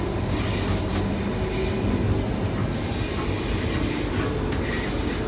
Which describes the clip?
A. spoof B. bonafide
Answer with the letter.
B